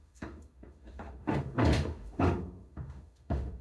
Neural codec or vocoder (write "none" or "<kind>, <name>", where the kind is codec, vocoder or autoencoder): autoencoder, DAC-VAE